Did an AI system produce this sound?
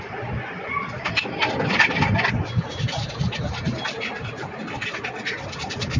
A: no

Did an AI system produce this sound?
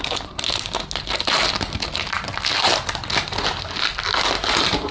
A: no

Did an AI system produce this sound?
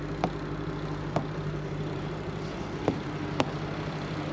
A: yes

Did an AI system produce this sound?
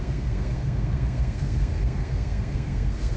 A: yes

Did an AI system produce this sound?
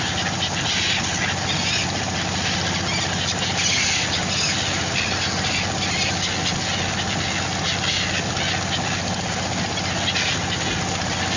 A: no